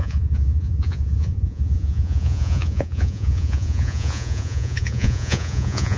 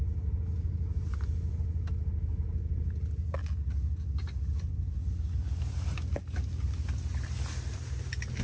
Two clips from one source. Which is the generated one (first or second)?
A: first